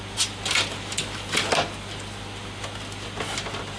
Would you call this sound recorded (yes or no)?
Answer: yes